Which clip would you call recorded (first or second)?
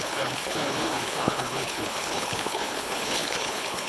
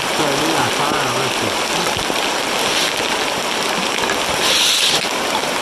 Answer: second